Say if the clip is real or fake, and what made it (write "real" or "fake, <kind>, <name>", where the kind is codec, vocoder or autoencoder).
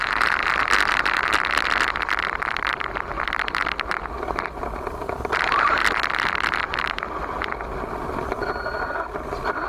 real